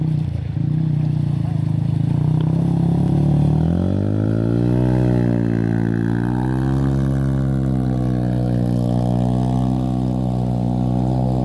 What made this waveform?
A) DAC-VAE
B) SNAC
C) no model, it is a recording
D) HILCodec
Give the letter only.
C